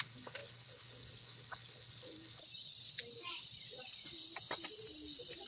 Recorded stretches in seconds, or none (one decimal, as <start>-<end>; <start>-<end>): 2.4-5.5